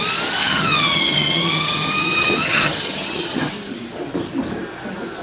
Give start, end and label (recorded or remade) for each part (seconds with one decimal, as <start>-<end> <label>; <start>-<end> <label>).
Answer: 0.0-0.4 recorded; 0.4-3.5 remade; 3.5-5.2 recorded